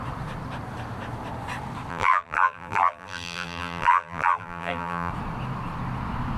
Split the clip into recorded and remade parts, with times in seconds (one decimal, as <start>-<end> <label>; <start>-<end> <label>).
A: 0.0-1.9 recorded; 1.9-5.1 remade; 5.1-6.4 recorded